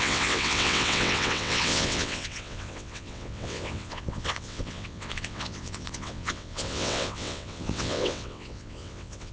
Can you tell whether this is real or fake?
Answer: fake